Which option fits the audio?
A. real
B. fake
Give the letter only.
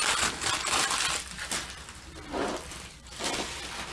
A